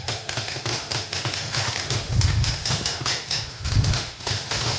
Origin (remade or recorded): remade